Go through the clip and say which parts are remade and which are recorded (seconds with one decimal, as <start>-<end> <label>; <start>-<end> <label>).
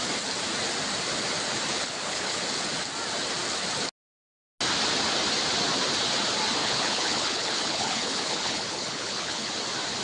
0.0-1.7 recorded; 1.7-2.4 remade; 2.4-6.6 recorded; 6.6-9.5 remade; 9.5-10.0 recorded